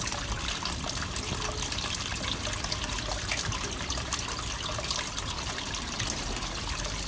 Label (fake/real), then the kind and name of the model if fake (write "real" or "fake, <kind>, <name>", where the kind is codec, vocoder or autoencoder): real